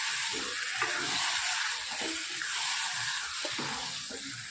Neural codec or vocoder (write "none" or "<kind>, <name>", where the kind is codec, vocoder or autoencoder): none